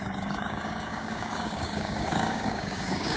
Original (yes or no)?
no